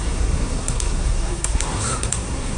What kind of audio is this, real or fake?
fake